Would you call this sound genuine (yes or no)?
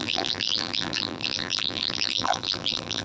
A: no